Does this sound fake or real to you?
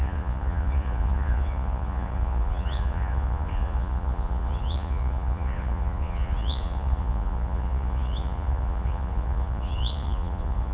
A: fake